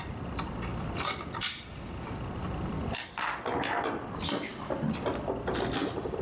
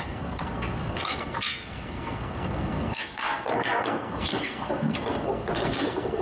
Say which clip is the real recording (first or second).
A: first